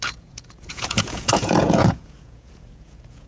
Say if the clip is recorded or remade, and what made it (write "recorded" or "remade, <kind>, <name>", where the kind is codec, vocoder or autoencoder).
remade, vocoder, Vocos